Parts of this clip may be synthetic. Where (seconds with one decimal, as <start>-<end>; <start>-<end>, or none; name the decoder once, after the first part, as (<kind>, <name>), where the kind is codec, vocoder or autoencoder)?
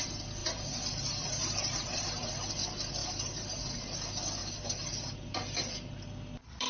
0.4-2.5 (vocoder, BigVGAN v2); 3.0-3.6; 4.4-5.3